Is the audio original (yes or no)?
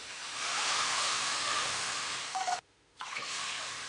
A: no